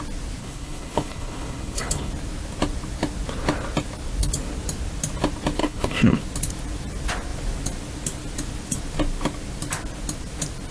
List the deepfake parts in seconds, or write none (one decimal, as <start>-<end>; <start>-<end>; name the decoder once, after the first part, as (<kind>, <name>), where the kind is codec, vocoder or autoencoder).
0.4-2.1 (codec, HILCodec); 5.6-6.2